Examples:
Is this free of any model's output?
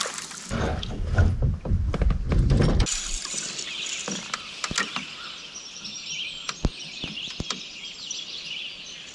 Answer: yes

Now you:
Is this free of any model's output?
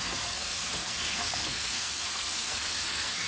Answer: no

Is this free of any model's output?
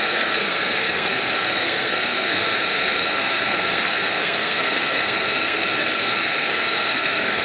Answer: no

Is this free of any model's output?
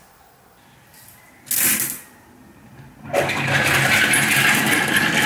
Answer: yes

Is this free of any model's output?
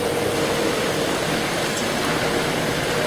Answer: yes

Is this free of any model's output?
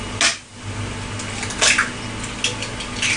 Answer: yes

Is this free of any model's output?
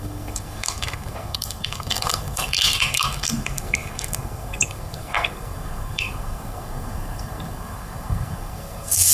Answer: no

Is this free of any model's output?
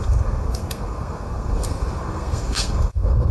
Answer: no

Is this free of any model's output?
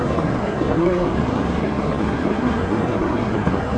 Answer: no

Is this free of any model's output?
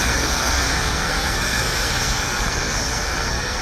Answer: no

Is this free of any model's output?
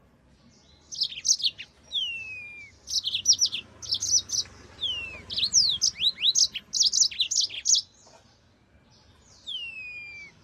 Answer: yes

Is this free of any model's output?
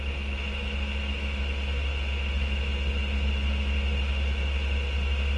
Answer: yes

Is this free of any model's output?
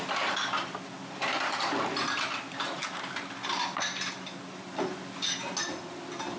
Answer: yes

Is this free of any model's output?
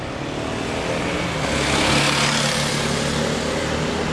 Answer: yes